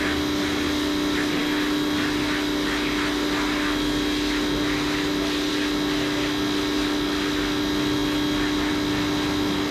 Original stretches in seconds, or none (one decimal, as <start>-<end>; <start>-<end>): 0.0-9.7